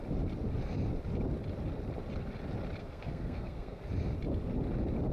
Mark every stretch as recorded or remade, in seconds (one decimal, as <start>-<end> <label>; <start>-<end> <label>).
0.0-2.8 recorded; 2.8-3.8 remade; 3.8-5.1 recorded